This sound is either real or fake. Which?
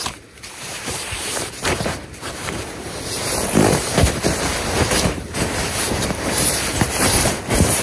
fake